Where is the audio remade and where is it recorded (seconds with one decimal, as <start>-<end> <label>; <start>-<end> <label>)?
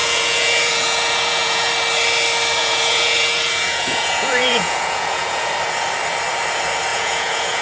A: 0.0-1.7 remade; 1.7-2.6 recorded; 2.6-5.5 remade; 5.5-6.9 recorded; 6.9-7.6 remade